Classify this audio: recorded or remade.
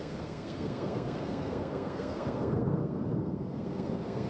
remade